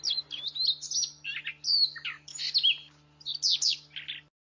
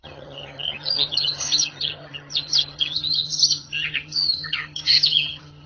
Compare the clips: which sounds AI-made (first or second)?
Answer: second